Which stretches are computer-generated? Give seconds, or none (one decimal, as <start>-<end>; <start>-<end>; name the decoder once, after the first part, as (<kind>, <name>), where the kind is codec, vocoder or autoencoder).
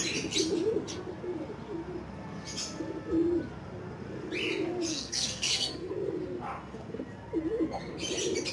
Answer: 4.9-5.9 (codec, SNAC)